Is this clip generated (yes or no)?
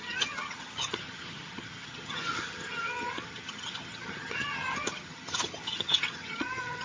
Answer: yes